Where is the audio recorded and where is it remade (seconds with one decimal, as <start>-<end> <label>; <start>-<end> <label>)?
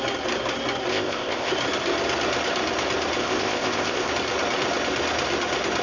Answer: 0.0-0.9 recorded; 0.9-1.5 remade; 1.5-3.2 recorded; 3.2-4.1 remade; 4.1-5.8 recorded